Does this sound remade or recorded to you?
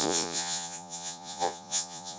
remade